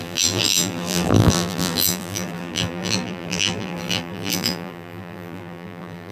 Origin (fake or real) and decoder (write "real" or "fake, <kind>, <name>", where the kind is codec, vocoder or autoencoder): fake, vocoder, BigVGAN v2